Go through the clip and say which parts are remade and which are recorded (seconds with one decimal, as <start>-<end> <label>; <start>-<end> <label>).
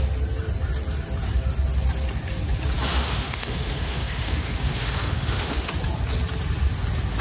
0.0-2.9 recorded; 2.9-5.7 remade; 5.7-7.2 recorded